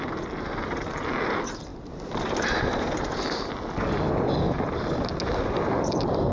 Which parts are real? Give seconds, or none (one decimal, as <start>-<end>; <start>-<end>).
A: 0.0-6.3